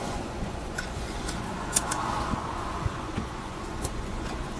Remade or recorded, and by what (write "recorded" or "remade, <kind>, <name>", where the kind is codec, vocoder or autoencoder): remade, vocoder, Vocos